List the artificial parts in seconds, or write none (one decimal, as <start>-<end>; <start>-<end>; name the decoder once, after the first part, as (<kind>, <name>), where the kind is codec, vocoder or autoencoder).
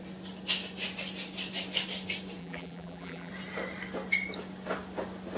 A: 2.4-3.3 (vocoder, BigVGAN v2)